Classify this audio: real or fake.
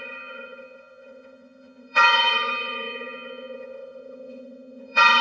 fake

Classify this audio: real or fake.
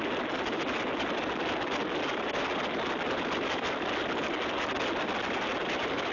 real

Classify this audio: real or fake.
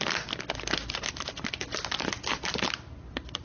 real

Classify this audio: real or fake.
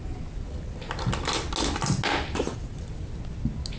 real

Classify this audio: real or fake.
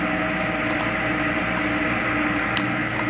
real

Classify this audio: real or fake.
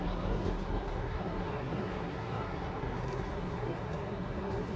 fake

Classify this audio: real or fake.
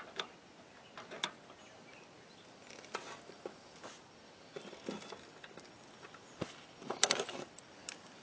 real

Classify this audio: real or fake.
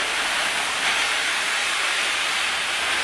real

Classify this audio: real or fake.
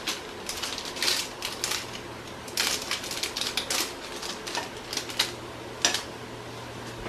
real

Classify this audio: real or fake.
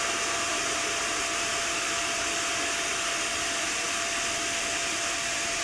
real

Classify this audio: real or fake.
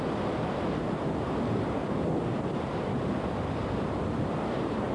real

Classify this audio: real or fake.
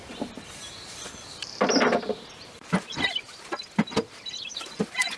fake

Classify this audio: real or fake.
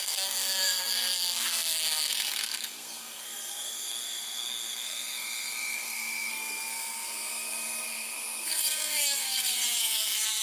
fake